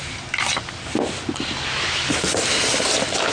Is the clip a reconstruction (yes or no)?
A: no